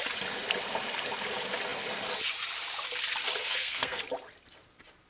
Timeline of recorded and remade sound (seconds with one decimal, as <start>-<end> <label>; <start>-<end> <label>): 0.0-3.4 recorded; 3.4-4.0 remade; 4.0-5.1 recorded